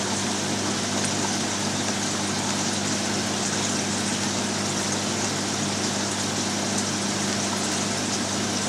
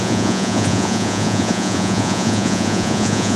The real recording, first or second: first